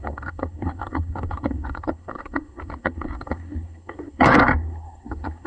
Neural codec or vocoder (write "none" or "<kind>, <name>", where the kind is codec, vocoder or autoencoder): codec, SNAC